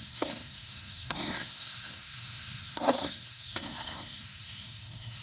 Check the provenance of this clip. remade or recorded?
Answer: remade